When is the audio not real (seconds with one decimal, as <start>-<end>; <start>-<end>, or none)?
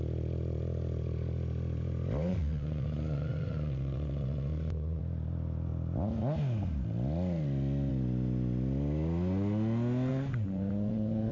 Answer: 2.3-5.0; 10.1-11.3